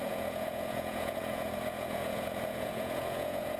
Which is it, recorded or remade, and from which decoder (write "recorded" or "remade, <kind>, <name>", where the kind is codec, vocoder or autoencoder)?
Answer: remade, vocoder, Vocos